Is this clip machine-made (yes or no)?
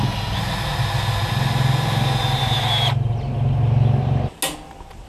no